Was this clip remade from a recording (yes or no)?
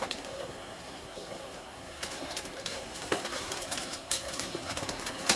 yes